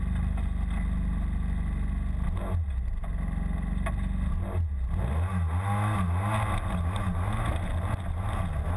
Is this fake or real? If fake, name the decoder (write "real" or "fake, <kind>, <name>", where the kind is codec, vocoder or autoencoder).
real